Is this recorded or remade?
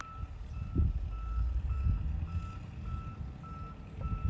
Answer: recorded